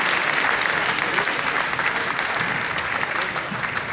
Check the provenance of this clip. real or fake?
real